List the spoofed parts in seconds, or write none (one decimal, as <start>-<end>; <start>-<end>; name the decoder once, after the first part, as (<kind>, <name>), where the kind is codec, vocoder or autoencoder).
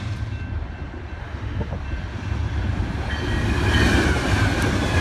1.2-1.7 (autoencoder, DAC-VAE)